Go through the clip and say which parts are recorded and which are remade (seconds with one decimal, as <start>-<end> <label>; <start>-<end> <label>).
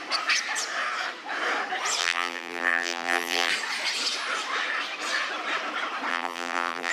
0.0-2.0 recorded; 2.0-3.5 remade; 3.5-6.1 recorded; 6.1-6.9 remade